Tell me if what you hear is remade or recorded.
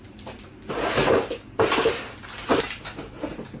recorded